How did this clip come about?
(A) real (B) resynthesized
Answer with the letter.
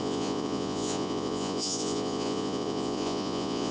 B